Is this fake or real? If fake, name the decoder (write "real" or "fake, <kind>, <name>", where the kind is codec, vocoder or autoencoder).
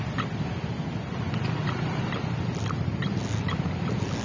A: real